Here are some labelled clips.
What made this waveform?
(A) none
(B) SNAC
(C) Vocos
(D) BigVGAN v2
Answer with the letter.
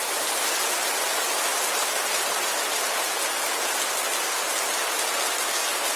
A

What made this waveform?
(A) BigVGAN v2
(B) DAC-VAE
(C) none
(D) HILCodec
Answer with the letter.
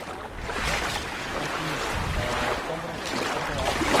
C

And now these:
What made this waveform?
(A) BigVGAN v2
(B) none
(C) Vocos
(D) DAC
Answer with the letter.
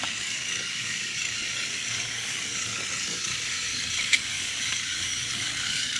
D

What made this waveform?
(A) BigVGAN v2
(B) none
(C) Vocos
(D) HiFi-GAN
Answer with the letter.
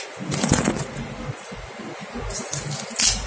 B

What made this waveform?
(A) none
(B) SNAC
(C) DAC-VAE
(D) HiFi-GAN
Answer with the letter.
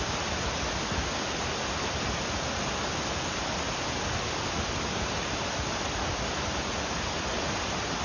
A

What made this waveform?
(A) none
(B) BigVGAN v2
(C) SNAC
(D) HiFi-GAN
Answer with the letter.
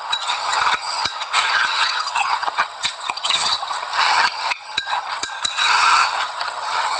D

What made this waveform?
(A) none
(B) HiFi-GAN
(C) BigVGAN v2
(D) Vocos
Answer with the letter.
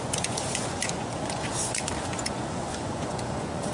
D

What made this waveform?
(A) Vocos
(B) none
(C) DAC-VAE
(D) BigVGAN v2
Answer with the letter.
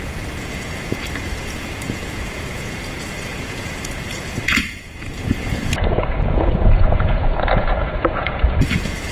A